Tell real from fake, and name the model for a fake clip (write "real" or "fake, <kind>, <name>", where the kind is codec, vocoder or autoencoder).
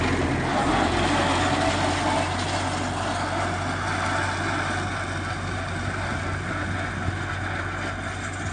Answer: real